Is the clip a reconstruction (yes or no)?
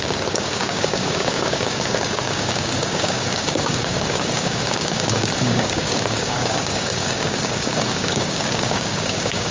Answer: yes